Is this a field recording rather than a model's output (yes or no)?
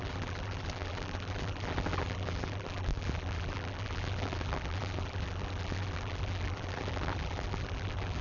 no